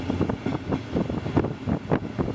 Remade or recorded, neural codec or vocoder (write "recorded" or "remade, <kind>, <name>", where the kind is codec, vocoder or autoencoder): recorded